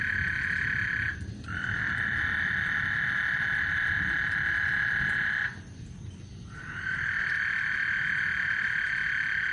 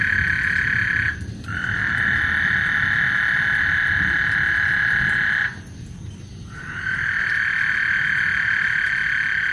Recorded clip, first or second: second